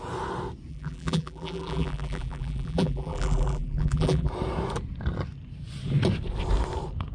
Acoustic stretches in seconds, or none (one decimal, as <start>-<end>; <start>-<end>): 0.0-0.7; 4.3-7.1